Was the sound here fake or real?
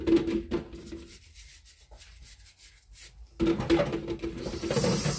real